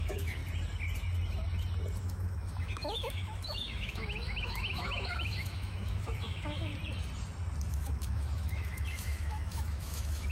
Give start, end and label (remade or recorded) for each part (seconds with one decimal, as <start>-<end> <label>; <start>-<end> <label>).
0.0-0.4 remade; 0.4-2.0 recorded; 2.0-6.7 remade; 6.7-7.7 recorded; 7.7-10.3 remade